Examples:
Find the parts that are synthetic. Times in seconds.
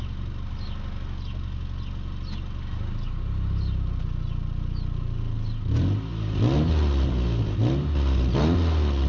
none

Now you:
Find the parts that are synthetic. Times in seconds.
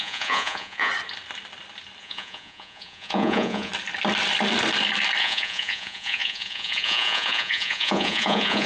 0.0-0.9; 2.0-3.7; 5.2-8.7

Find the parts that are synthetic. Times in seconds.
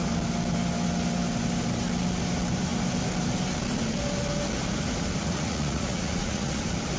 5.2-6.6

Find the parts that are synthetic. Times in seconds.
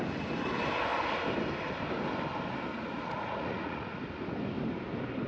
2.7-4.0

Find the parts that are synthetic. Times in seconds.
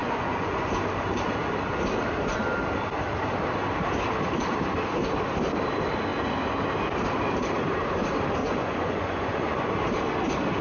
0.0-0.7; 8.4-9.8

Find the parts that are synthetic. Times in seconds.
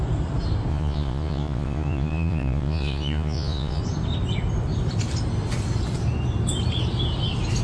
0.7-3.8